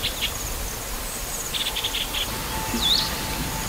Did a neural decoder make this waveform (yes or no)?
no